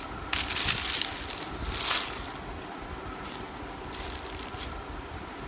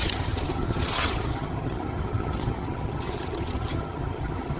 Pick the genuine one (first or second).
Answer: first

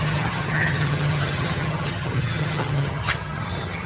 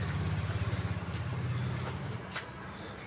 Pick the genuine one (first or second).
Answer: second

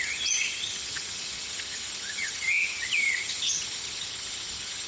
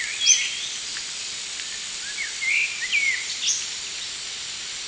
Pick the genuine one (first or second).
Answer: second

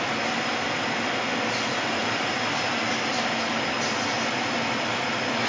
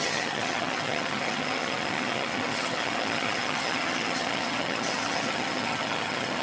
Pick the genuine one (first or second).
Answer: first